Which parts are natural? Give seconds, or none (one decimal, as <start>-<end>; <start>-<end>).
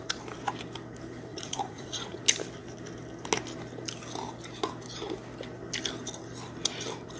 0.0-1.3; 2.2-7.2